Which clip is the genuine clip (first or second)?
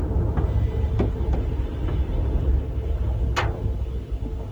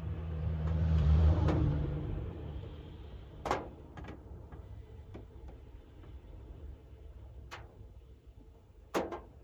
first